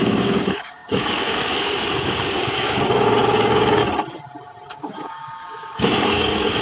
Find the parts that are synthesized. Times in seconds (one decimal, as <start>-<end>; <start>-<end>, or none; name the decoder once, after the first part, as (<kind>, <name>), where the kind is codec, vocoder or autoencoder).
0.0-3.8 (codec, DAC); 4.7-6.6